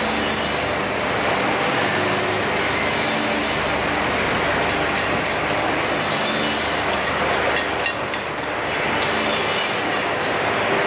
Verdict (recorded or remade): recorded